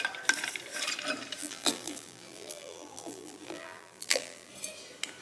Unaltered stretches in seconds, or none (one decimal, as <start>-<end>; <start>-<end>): 0.0-1.4; 4.5-5.2